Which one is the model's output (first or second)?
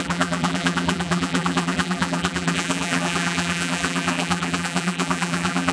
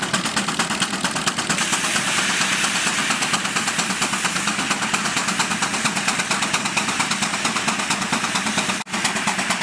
first